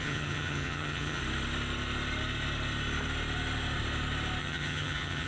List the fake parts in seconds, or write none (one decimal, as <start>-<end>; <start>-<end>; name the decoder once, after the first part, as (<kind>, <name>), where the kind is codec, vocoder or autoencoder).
0.0-1.2 (vocoder, HiFi-GAN); 4.4-5.3